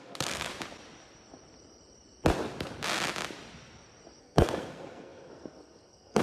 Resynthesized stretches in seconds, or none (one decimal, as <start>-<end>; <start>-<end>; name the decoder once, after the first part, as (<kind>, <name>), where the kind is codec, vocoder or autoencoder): 0.0-0.5 (codec, SNAC); 4.2-6.2